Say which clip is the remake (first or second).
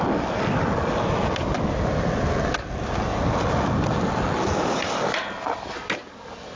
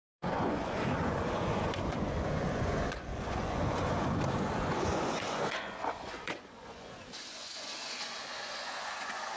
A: second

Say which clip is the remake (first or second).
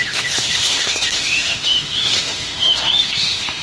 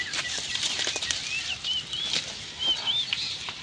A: first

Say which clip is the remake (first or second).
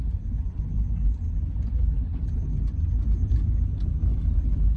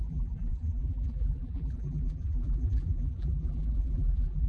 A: second